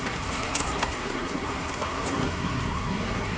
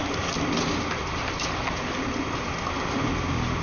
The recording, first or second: second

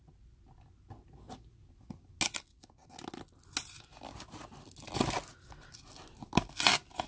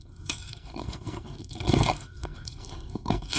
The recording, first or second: first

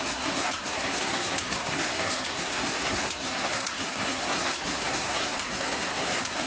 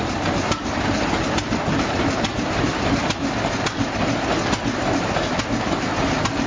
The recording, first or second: second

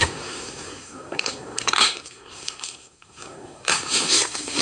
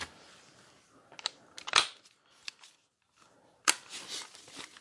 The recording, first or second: second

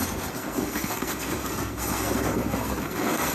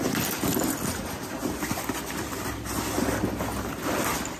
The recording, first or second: second